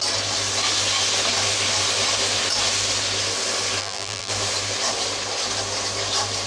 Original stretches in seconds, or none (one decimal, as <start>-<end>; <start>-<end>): 0.0-3.8; 4.3-6.5